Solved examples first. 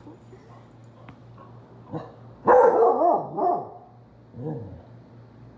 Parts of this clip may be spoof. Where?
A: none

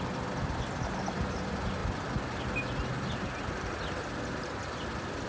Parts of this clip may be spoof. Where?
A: none

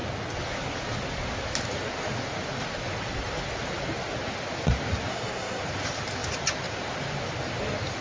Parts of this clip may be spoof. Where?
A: 5.1-5.6 (codec, SNAC)

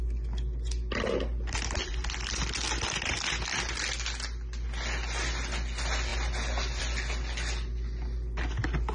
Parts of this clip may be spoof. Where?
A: none

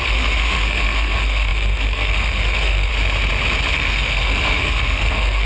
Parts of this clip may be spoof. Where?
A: 0.0-2.9 (codec, SNAC); 3.7-5.5

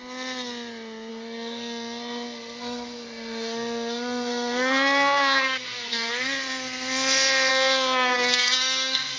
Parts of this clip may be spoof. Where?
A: 1.1-6.1 (codec, SNAC); 7.5-9.2

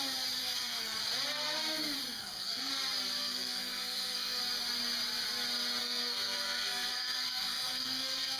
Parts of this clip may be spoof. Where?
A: 0.4-1.0 (codec, SNAC); 2.1-2.7; 3.2-4.4; 5.8-8.4

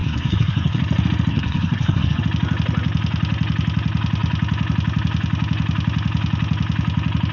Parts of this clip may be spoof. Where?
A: 0.0-0.8 (codec, SNAC); 1.3-2.2